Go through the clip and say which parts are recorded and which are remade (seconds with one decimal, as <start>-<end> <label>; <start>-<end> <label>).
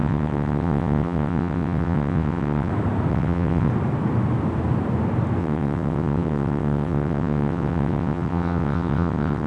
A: 0.0-2.7 remade; 2.7-3.1 recorded; 3.1-3.7 remade; 3.7-5.4 recorded; 5.4-9.5 remade